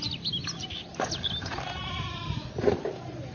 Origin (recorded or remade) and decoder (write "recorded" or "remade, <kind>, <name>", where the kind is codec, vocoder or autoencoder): recorded